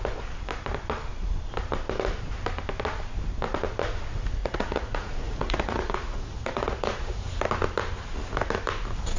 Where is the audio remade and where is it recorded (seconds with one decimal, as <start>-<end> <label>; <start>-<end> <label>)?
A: 0.0-4.4 recorded; 4.4-7.3 remade; 7.3-9.2 recorded